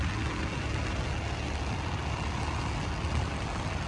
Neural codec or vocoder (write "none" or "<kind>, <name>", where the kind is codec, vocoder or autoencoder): none